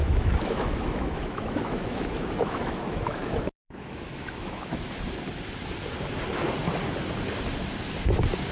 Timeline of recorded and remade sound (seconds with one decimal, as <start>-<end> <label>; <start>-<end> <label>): 0.0-4.8 remade; 4.8-8.5 recorded